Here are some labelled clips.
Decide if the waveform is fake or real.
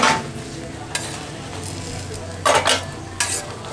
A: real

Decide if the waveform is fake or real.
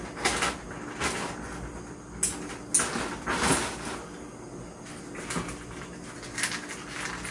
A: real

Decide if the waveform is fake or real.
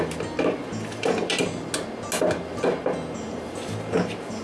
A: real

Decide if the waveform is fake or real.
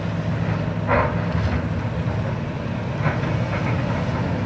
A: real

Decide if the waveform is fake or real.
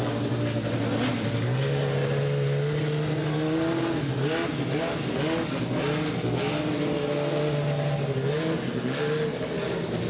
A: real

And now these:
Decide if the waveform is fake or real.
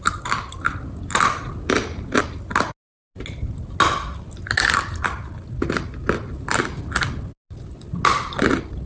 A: real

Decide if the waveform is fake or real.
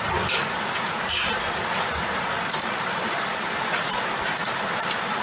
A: real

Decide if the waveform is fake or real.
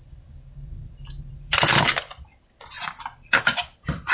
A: fake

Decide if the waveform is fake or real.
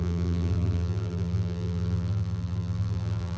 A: fake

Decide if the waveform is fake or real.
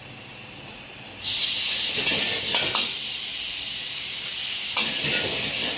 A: real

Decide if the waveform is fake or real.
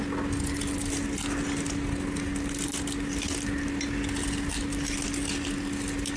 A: real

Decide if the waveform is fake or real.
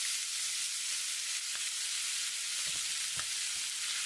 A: real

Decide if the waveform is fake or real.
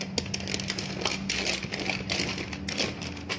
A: real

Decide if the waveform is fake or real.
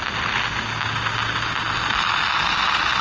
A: real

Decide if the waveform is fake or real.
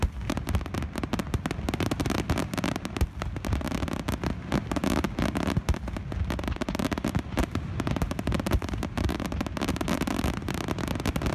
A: real